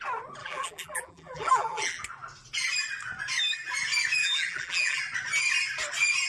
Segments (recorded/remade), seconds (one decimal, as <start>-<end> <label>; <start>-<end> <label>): 0.0-0.4 recorded; 0.4-2.0 remade; 2.0-4.2 recorded; 4.2-5.0 remade; 5.0-6.3 recorded